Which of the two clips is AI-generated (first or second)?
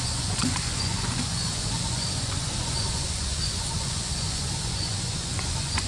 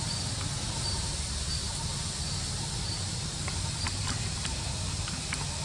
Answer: first